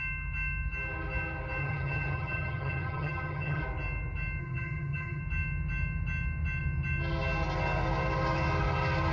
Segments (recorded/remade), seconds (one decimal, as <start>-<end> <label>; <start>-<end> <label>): 0.0-1.6 recorded; 1.6-3.6 remade; 3.6-4.4 recorded; 4.4-5.2 remade; 5.2-9.1 recorded